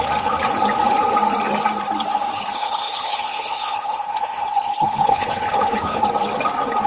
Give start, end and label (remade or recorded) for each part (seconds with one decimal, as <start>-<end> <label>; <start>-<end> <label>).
0.0-2.4 recorded; 2.4-6.0 remade; 6.0-6.9 recorded